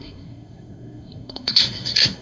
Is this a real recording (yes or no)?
no